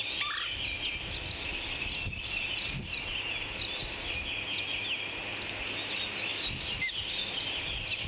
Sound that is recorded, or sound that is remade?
recorded